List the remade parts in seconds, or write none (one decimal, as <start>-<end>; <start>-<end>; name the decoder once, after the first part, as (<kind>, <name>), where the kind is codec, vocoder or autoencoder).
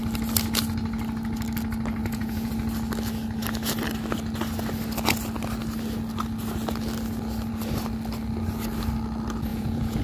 2.0-2.5 (vocoder, Vocos); 9.5-10.0